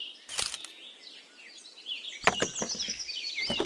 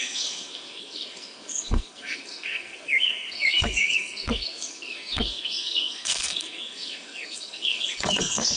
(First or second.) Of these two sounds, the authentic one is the first